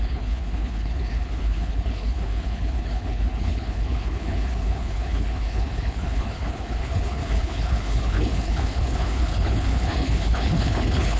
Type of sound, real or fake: fake